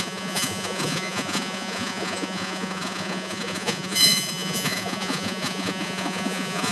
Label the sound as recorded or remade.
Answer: remade